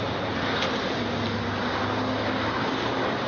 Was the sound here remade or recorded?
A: recorded